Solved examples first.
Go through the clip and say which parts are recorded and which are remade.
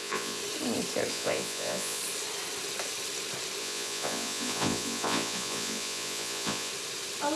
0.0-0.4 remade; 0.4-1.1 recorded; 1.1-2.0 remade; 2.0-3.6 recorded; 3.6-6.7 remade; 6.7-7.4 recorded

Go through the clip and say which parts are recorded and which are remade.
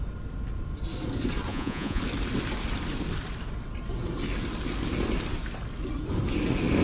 0.0-1.5 recorded; 1.5-2.0 remade; 2.0-6.8 recorded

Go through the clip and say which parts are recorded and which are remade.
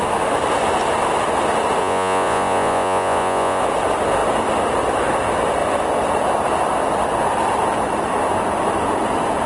0.0-1.8 recorded; 1.8-3.6 remade; 3.6-9.5 recorded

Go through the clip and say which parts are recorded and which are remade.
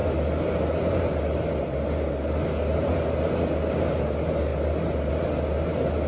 0.0-6.1 recorded